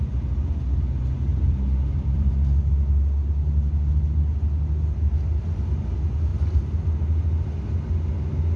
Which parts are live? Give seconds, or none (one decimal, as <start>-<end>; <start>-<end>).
0.0-1.3; 2.3-8.6